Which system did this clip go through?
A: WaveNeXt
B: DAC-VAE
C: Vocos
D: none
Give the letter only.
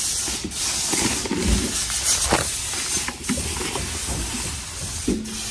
D